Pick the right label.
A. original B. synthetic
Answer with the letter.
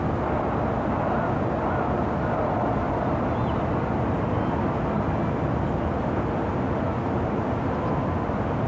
A